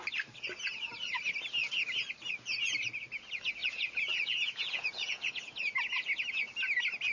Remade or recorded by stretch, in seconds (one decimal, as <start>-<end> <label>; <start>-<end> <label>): 0.0-3.6 recorded; 3.6-5.3 remade; 5.3-7.1 recorded